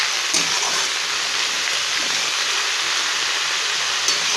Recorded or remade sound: recorded